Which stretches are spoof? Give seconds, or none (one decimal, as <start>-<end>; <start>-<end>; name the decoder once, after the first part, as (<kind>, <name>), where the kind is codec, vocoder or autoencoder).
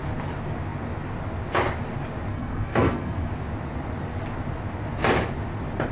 2.3-3.3 (codec, SNAC)